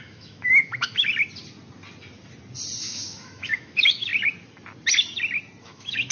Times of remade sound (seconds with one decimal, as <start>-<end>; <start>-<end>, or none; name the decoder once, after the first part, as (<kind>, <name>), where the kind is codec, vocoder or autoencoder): 0.0-1.1 (autoencoder, DAC-VAE); 2.8-4.1; 5.6-6.1